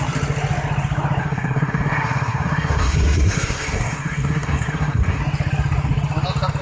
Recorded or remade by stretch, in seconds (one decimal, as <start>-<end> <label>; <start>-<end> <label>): 0.0-1.2 recorded; 1.2-5.2 remade; 5.2-6.6 recorded

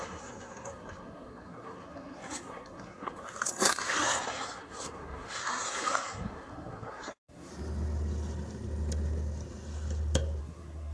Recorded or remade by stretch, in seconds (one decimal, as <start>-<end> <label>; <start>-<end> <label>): 0.0-7.5 remade; 7.5-10.4 recorded; 10.4-10.9 remade